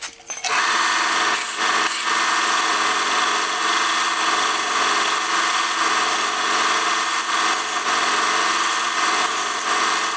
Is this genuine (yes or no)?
yes